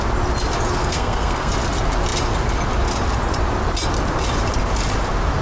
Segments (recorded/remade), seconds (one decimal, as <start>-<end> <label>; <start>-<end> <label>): 0.0-0.8 recorded; 0.8-1.5 remade; 1.5-5.4 recorded